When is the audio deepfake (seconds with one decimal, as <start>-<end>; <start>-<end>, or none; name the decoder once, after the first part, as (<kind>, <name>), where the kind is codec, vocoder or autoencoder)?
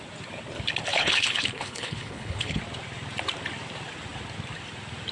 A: 0.9-2.6 (codec, HILCodec)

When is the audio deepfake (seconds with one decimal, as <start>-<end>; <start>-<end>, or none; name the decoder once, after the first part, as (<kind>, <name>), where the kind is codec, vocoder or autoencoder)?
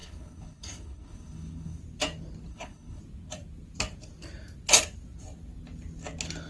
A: 0.0-1.8 (codec, HILCodec); 2.5-3.0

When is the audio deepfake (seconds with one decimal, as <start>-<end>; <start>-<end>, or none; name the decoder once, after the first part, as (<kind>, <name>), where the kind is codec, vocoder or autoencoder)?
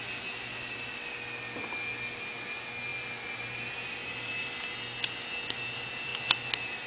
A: none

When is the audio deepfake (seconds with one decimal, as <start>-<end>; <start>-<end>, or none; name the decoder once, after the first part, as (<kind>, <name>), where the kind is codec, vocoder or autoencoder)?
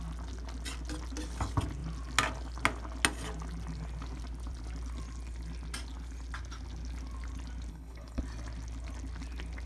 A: 7.7-8.2 (codec, HILCodec)